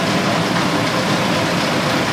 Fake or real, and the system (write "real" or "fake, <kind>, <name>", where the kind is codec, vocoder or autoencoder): real